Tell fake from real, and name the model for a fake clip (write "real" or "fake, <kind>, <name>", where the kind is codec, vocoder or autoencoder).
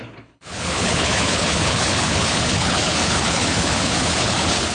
fake, codec, HILCodec